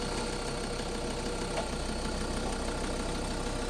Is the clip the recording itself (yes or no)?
yes